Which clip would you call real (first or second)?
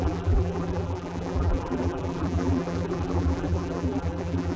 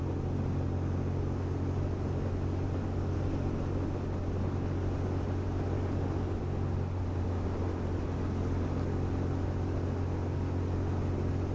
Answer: second